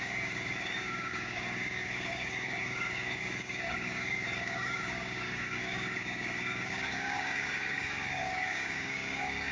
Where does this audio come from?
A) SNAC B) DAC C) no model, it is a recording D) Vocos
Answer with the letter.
B